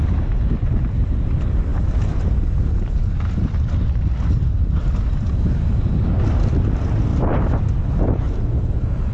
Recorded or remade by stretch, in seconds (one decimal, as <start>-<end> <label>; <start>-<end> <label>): 0.0-7.1 recorded; 7.1-7.6 remade; 7.6-9.1 recorded